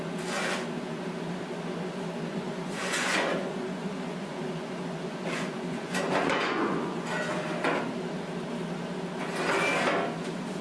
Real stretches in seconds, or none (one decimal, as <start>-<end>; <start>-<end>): 0.0-2.3; 7.1-10.6